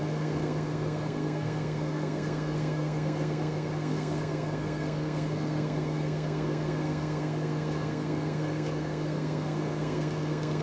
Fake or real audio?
fake